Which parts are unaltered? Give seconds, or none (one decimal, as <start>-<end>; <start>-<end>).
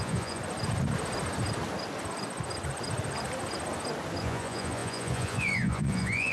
0.4-4.2